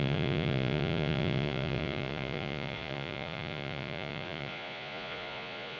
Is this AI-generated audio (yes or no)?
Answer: yes